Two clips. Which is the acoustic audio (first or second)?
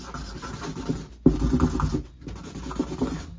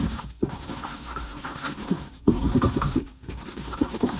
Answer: first